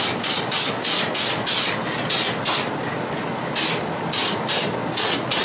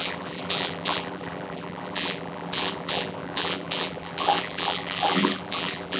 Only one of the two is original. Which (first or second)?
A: first